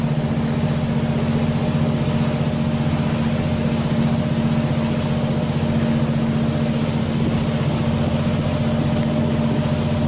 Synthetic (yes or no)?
no